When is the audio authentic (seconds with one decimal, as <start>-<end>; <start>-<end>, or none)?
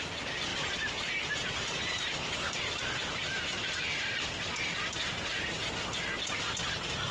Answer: 0.0-0.5; 4.3-7.1